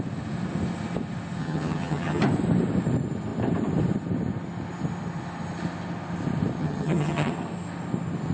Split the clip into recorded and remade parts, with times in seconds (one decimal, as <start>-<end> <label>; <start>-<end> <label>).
0.0-1.4 recorded; 1.4-2.2 remade; 2.2-6.6 recorded; 6.6-7.3 remade; 7.3-8.3 recorded